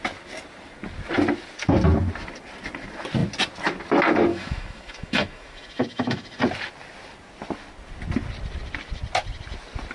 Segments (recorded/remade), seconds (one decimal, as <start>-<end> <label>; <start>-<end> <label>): 0.0-4.3 recorded; 4.3-6.4 remade; 6.4-9.9 recorded